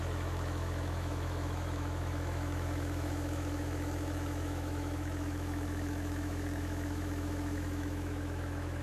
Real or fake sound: fake